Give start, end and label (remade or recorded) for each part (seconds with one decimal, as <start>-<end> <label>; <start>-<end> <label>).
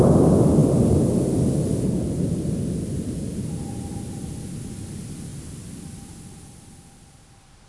0.0-7.7 recorded